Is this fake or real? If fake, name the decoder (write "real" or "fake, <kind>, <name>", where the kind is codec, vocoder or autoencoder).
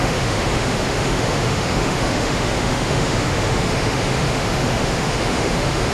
fake, autoencoder, DAC-VAE